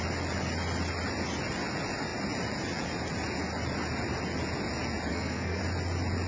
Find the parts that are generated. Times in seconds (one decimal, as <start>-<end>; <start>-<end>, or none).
5.1-5.6